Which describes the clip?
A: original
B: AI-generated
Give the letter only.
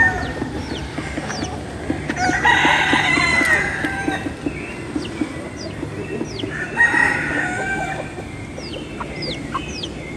A